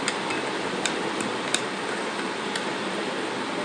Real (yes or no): yes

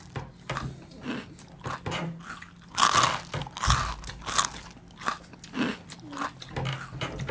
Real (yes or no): yes